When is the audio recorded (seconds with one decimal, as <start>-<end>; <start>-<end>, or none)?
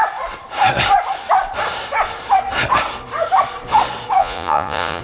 0.0-4.2